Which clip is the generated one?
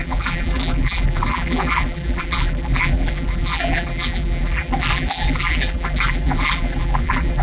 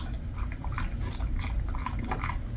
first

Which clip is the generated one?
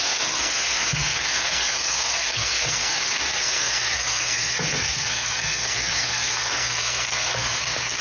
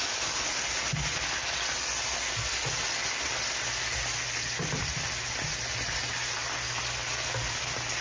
first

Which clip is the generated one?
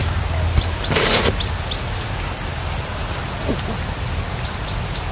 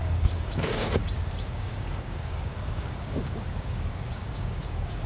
second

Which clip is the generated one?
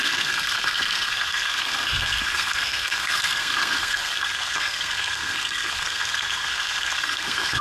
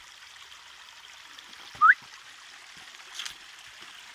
first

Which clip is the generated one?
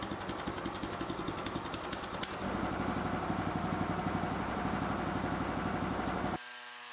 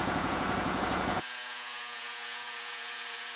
second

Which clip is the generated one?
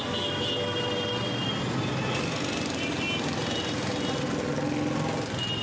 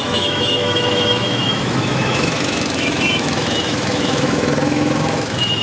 second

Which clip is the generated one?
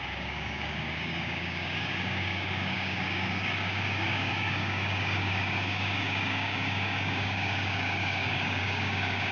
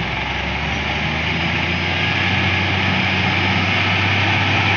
first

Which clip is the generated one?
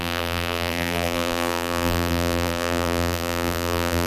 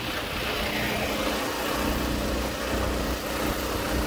first